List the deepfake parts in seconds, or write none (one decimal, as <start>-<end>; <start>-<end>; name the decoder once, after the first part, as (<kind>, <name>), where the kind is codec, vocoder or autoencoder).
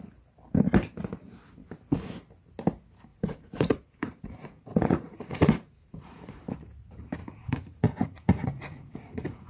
3.1-6.4 (vocoder, Vocos); 7.2-9.5